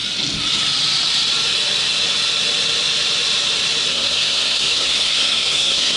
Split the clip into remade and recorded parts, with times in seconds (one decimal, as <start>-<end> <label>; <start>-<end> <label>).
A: 0.0-3.9 recorded; 3.9-6.0 remade